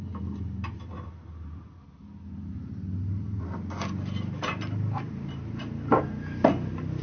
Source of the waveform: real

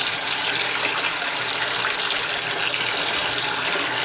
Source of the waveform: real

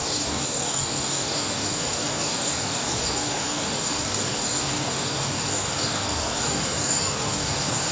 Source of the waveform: fake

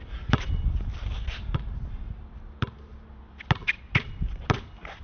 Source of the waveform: real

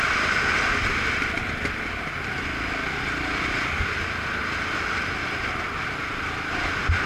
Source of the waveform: real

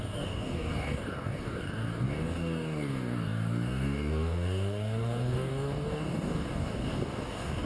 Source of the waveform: fake